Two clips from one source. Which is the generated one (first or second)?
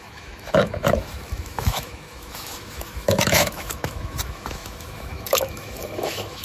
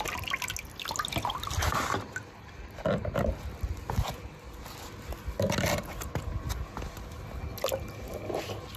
first